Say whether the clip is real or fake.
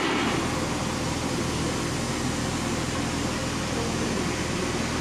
real